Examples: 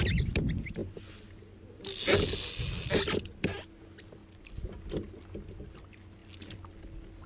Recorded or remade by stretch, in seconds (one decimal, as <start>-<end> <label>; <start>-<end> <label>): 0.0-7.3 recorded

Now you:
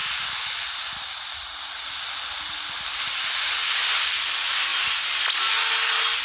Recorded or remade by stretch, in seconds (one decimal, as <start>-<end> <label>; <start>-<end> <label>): 0.0-6.2 recorded

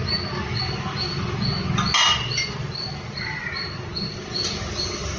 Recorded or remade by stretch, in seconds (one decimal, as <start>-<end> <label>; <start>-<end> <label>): 0.0-5.2 recorded

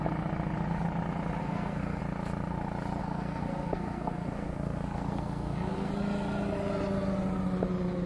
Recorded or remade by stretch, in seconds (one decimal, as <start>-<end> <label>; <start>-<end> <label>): 0.0-1.4 recorded; 1.4-2.0 remade; 2.0-3.0 recorded; 3.0-5.9 remade; 5.9-8.1 recorded

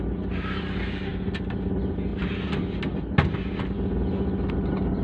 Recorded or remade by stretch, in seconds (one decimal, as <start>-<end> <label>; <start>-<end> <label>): 0.0-5.0 recorded

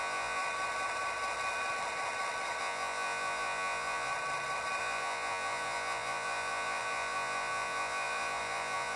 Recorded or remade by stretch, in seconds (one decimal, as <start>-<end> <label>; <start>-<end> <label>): 0.0-0.4 remade; 0.4-2.6 recorded; 2.6-4.1 remade; 4.1-4.8 recorded; 4.8-9.0 remade